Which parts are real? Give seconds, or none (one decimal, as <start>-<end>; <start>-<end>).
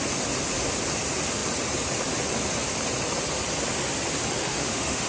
0.0-4.4